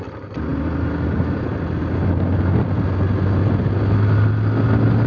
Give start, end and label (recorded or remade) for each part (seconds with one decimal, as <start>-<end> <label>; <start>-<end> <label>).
0.0-5.1 recorded